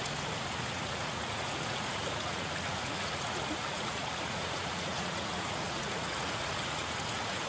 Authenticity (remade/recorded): remade